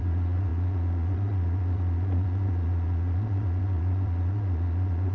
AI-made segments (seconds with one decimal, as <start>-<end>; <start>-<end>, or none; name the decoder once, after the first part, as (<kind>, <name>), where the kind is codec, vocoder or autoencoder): 0.0-5.1 (vocoder, Vocos)